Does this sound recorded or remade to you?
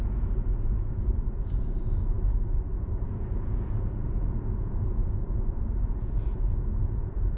remade